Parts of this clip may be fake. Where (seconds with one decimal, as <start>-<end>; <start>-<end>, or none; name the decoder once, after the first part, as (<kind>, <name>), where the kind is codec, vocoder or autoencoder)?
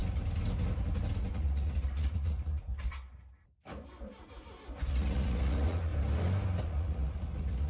1.3-2.7 (vocoder, Vocos); 4.9-5.9; 6.6-7.7